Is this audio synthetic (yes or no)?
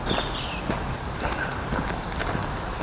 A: yes